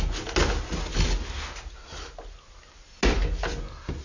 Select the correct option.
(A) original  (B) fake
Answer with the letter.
A